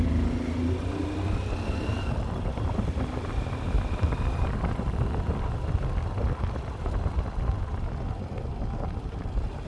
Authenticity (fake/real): real